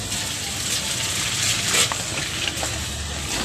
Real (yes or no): yes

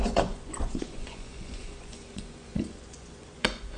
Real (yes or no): no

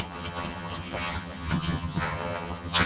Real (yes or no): no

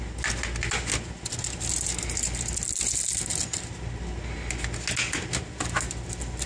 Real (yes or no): yes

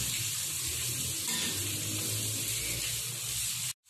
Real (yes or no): yes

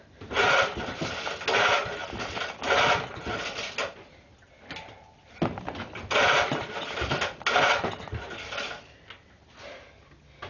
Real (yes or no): yes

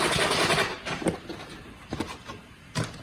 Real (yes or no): yes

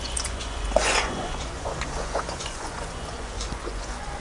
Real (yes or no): no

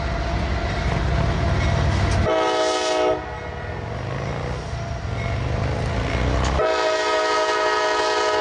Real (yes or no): yes